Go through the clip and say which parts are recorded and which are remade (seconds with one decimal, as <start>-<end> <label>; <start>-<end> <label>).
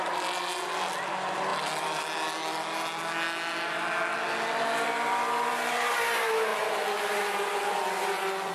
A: 0.0-8.5 recorded